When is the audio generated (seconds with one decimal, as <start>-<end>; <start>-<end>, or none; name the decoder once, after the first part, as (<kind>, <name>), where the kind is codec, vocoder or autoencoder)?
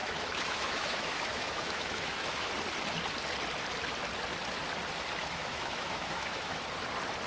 0.0-2.5 (autoencoder, DAC-VAE); 5.2-6.6